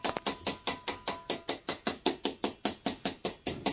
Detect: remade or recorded recorded